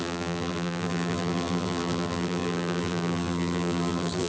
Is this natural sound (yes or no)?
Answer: no